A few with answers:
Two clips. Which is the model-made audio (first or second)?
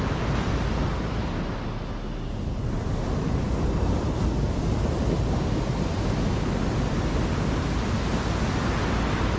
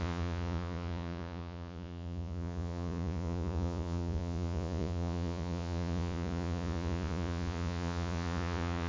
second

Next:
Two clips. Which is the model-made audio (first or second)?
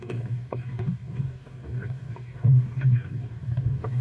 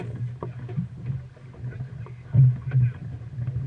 first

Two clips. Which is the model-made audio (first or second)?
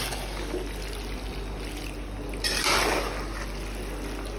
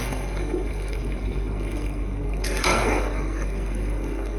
second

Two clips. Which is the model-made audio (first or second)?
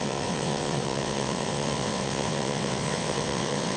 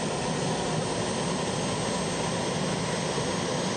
first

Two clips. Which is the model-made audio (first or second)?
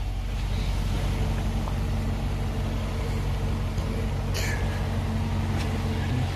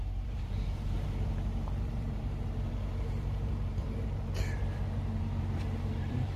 second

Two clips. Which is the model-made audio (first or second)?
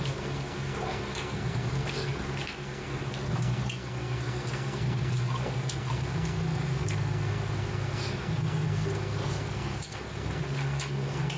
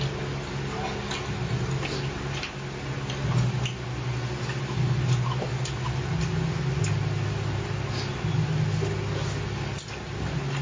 first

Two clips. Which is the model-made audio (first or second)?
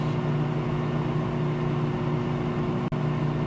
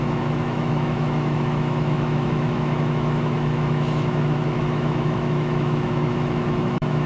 second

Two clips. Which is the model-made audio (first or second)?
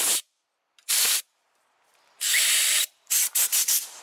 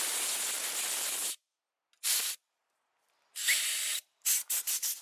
first